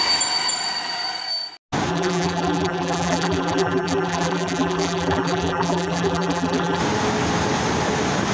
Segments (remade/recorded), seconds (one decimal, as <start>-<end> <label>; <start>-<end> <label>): 0.0-1.9 recorded; 1.9-6.8 remade; 6.8-8.3 recorded